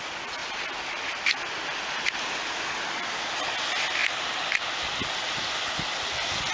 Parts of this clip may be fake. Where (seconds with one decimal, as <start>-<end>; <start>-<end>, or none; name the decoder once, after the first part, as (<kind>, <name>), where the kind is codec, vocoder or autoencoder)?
none